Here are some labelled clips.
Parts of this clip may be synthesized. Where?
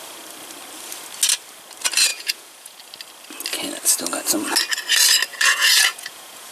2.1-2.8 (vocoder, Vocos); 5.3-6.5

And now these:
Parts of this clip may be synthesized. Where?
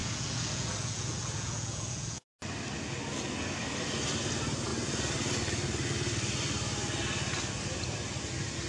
0.0-2.2 (vocoder, Vocos)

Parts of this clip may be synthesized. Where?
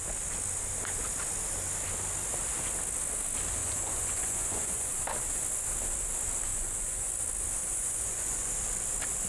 3.6-5.0 (vocoder, Vocos); 6.5-7.1; 7.6-8.5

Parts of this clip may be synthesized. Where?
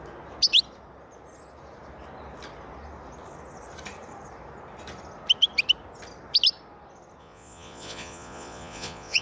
7.2-9.2 (vocoder, Vocos)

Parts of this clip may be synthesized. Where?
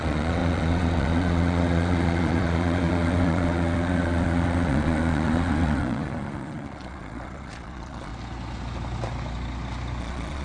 0.0-8.1 (vocoder, Vocos); 10.0-10.4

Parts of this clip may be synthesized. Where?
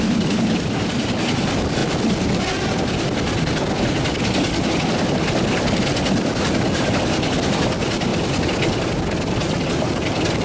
none